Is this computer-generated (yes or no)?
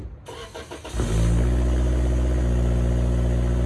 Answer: no